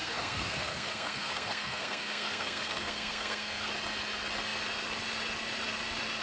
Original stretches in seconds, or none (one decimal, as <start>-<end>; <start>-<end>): 3.7-6.2